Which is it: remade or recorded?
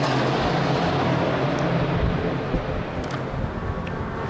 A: recorded